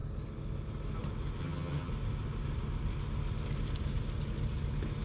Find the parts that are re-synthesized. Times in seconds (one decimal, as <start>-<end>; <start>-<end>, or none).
1.4-1.9

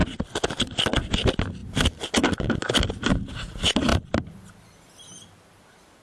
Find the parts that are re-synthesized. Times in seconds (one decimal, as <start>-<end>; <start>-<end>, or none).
0.0-1.1